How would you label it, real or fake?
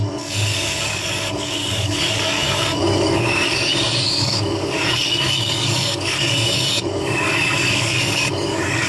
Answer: fake